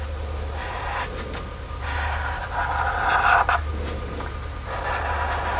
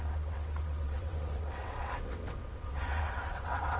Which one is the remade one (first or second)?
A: second